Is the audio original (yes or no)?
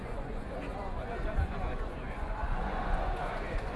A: no